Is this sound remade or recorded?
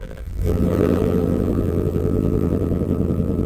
remade